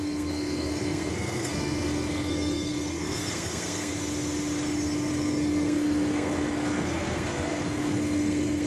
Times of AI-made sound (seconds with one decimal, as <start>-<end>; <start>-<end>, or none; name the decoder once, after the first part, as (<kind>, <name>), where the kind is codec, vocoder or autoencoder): 0.0-3.9 (codec, SNAC); 5.1-8.7